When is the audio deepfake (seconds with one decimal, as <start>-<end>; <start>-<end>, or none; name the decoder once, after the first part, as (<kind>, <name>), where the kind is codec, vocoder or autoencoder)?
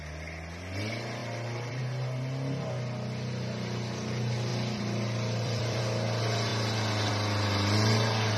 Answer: 1.2-1.8 (vocoder, BigVGAN v2); 4.5-5.8